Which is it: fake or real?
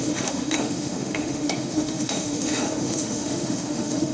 fake